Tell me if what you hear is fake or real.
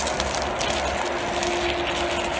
real